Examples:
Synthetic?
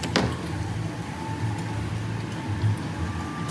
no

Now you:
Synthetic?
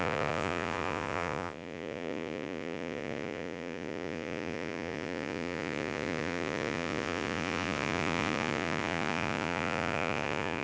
yes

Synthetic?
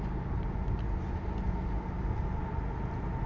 no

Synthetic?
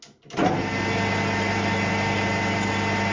no